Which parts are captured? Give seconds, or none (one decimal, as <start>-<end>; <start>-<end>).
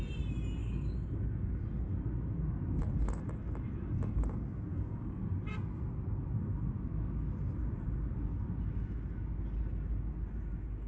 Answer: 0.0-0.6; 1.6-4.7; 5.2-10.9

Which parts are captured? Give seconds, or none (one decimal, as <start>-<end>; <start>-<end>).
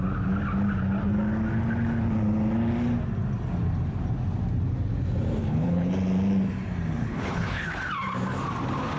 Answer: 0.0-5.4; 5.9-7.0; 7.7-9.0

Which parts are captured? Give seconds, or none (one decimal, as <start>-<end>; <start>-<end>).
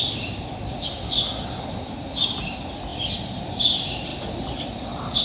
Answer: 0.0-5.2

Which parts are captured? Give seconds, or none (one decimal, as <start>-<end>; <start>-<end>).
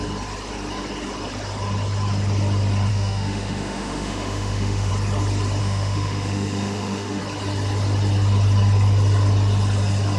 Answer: 0.0-2.9; 4.9-5.6; 7.2-10.2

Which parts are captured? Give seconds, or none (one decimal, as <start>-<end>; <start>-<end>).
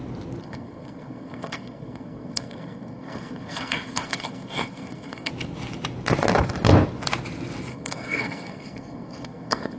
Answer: 0.0-0.4; 5.3-7.7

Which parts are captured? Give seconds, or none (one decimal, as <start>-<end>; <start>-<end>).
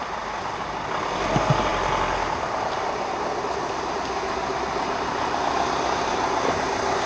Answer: 0.0-7.1